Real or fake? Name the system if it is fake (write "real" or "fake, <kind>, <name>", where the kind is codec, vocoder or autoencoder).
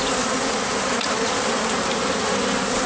real